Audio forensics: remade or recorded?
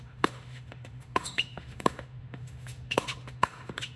remade